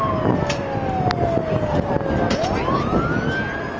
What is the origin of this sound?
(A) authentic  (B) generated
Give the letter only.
A